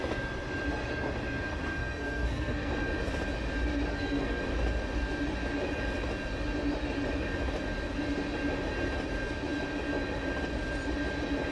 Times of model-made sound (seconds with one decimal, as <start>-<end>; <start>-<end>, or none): 1.8-2.7; 3.9-4.4